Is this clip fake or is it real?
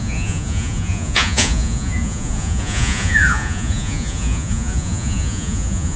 fake